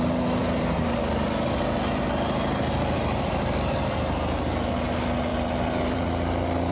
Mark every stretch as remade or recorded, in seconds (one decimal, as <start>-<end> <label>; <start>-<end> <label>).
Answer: 0.0-5.3 remade; 5.3-5.9 recorded; 5.9-6.7 remade

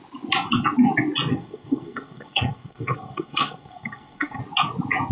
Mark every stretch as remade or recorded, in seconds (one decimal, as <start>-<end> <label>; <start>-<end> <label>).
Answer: 0.0-1.3 recorded; 1.3-4.4 remade; 4.4-5.1 recorded

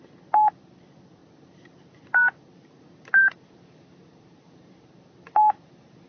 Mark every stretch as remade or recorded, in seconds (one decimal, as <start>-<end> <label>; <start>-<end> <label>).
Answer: 0.0-6.1 recorded

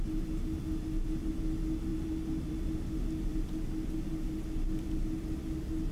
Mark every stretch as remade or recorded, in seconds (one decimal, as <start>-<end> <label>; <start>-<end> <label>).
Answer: 0.0-5.9 recorded

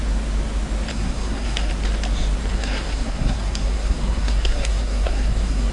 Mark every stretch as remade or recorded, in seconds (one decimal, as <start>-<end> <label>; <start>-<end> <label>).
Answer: 0.0-0.9 recorded; 0.9-1.7 remade; 1.7-2.5 recorded; 2.5-5.7 remade

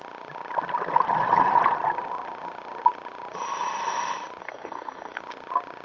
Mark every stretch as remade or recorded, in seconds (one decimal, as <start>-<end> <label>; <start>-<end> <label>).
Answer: 0.0-4.4 recorded; 4.4-5.2 remade; 5.2-5.8 recorded

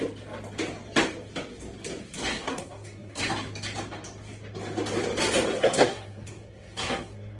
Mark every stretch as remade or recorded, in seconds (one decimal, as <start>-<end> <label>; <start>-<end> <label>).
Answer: 0.0-2.3 recorded; 2.3-3.2 remade; 3.2-5.6 recorded; 5.6-7.4 remade

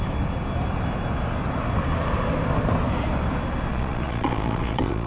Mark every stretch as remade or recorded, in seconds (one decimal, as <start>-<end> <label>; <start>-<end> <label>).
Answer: 0.0-3.7 recorded; 3.7-5.1 remade